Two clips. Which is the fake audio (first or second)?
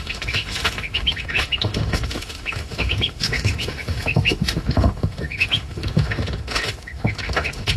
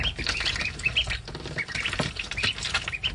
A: first